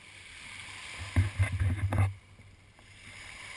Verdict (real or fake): real